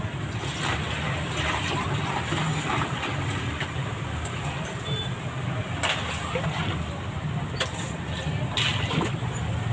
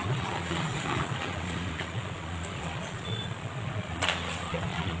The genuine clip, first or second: first